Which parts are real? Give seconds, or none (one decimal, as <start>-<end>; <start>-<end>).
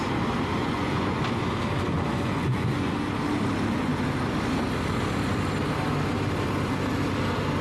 0.0-0.6; 1.2-1.9; 2.9-7.6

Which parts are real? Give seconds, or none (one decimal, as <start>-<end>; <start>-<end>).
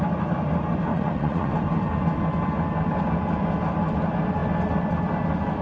0.0-0.9; 1.5-5.6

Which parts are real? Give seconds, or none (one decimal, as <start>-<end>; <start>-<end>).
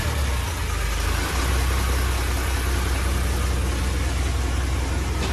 0.0-5.3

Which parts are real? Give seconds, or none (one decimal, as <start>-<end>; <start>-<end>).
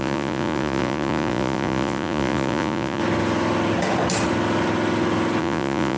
3.0-5.4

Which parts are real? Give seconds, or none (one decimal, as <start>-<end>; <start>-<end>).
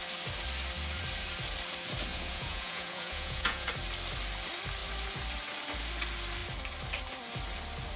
0.0-2.1; 3.7-8.0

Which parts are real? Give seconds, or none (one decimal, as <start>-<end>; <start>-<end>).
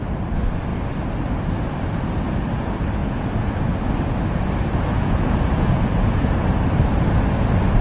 0.0-3.0; 3.8-5.0; 6.3-7.8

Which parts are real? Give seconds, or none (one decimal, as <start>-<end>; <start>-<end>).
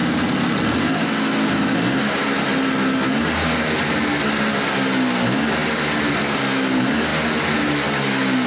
0.0-8.5